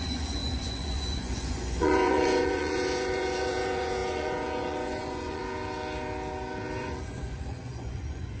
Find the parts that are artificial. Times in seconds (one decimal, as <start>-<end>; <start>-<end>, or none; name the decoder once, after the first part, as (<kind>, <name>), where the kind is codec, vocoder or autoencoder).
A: 0.0-5.4 (vocoder, Vocos); 6.8-8.4